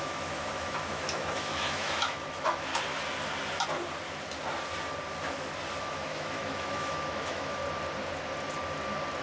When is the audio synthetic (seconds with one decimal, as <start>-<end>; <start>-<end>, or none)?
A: 0.0-2.7; 5.8-7.6